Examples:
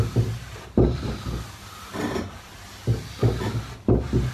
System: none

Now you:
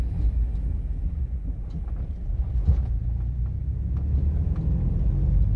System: none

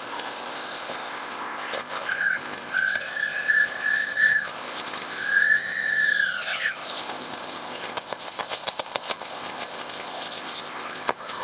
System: codec, ZipCodec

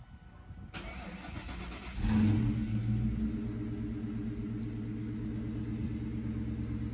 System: none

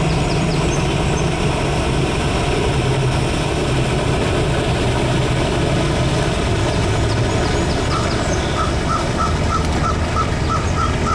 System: none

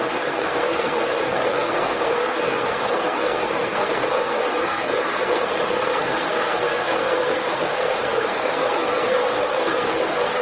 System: codec, SNAC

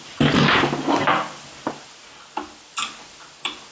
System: none